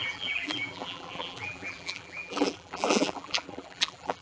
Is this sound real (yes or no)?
no